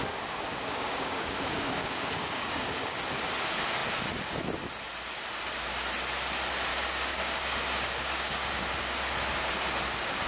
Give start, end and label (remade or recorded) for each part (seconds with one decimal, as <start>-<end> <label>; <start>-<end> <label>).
0.0-0.5 recorded; 0.5-3.0 remade; 3.0-6.7 recorded; 6.7-8.5 remade; 8.5-10.3 recorded